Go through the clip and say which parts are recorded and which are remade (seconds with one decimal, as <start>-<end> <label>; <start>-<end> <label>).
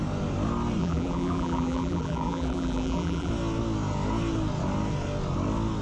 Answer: 0.0-0.8 recorded; 0.8-3.3 remade; 3.3-5.8 recorded